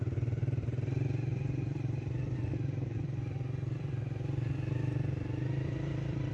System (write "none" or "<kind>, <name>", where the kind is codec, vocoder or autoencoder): vocoder, BigVGAN v2